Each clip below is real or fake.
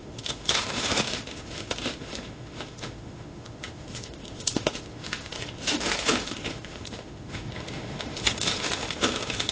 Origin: fake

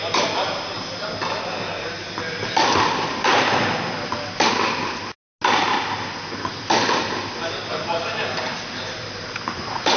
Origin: real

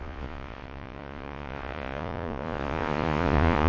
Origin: fake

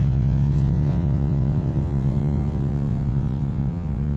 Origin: fake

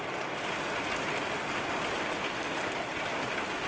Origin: real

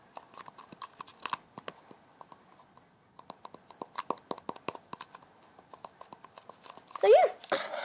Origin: real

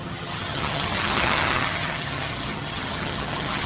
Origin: fake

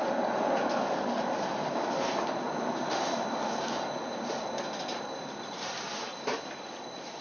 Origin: real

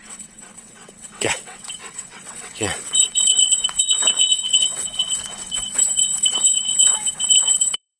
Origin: fake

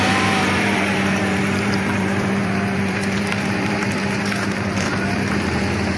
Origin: fake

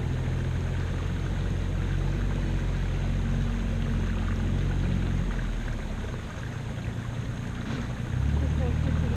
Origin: real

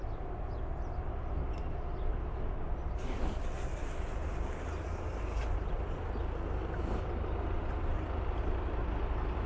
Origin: real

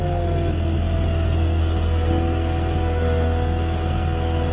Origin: fake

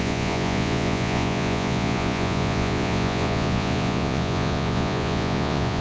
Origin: fake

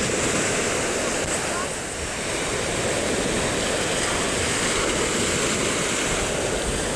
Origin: real